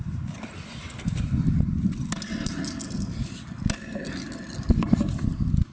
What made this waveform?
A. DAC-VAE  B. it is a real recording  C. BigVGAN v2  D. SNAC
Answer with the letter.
B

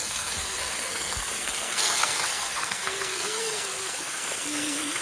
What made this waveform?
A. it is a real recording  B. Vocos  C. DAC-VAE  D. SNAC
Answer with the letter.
D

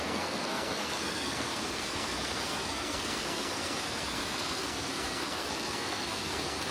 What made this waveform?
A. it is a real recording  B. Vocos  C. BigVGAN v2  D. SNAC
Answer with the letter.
D